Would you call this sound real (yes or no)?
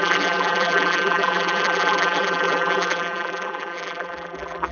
no